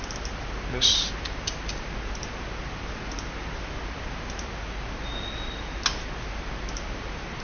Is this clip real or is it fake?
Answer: real